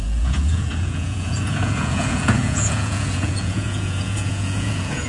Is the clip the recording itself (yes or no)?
no